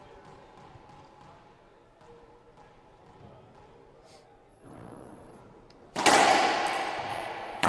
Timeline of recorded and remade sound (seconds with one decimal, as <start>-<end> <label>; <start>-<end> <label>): 0.0-4.5 recorded; 4.5-5.4 remade; 5.4-7.1 recorded; 7.1-7.7 remade